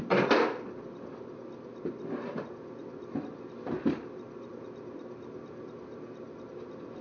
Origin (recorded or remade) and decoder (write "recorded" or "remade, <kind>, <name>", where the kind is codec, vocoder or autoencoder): recorded